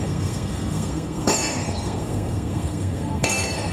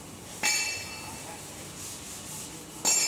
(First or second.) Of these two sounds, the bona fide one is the second